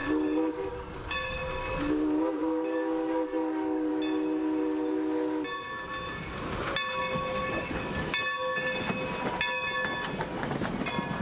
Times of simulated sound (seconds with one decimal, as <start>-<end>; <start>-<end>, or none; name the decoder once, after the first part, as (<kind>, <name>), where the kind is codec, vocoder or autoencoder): 0.0-1.4 (codec, DAC); 2.4-3.9